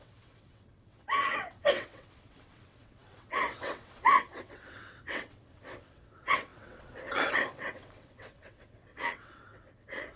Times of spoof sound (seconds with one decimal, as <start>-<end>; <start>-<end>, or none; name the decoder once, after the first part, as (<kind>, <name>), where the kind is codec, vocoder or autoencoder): 0.0-10.2 (vocoder, WaveNeXt)